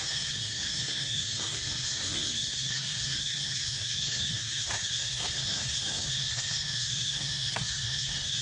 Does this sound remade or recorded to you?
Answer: remade